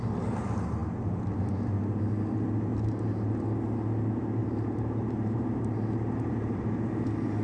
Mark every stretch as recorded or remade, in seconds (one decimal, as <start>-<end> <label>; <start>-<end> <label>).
0.0-2.7 recorded; 2.7-3.3 remade; 3.3-4.4 recorded; 4.4-6.6 remade; 6.6-7.4 recorded